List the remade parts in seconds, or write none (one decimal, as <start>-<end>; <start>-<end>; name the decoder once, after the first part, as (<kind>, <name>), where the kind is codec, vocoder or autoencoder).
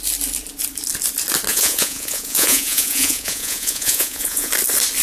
1.5-4.5 (vocoder, Vocos)